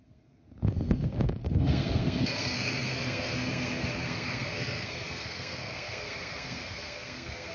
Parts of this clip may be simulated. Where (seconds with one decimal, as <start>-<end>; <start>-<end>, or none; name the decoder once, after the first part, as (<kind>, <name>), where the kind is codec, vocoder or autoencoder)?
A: 0.0-7.5 (codec, SNAC)